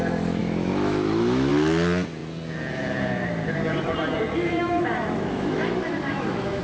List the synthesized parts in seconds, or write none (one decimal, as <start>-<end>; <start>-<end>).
0.4-1.5; 4.4-6.6